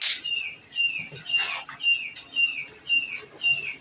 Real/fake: real